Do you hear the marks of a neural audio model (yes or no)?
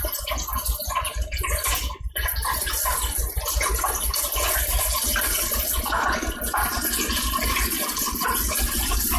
no